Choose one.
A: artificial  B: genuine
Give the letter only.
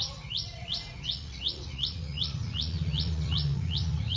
A